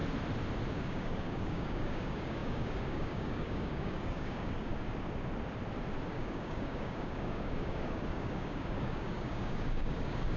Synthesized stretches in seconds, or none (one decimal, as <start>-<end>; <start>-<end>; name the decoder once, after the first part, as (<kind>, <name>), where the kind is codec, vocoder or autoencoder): 0.7-4.7 (codec, DAC); 6.1-10.4